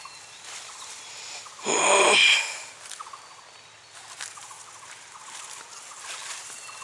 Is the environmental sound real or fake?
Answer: real